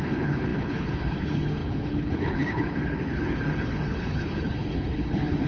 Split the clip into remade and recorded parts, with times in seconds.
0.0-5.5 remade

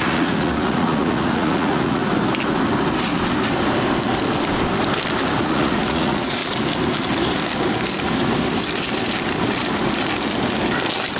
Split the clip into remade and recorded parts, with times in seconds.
0.0-2.0 remade; 2.0-5.4 recorded; 5.4-6.4 remade; 6.4-11.2 recorded